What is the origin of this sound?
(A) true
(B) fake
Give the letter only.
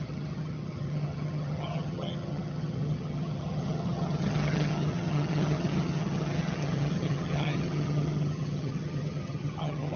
B